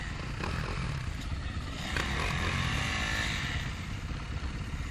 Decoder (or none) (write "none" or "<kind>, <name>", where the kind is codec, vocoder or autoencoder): none